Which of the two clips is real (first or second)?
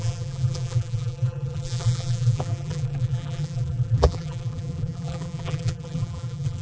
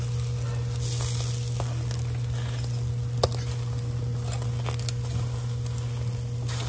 second